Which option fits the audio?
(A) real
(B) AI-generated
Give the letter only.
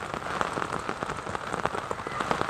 A